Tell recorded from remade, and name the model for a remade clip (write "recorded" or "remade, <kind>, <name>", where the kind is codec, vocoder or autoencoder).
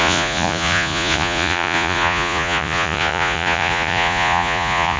remade, vocoder, Vocos